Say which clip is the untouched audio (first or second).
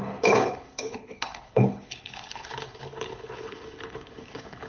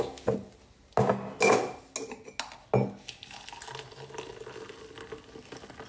second